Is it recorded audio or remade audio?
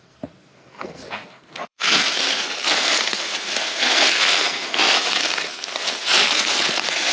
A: remade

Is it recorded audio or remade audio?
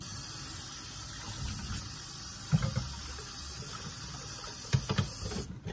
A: recorded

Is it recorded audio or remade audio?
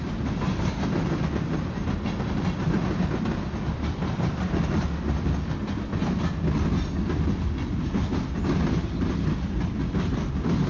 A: recorded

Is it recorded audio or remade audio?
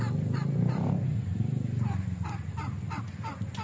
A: recorded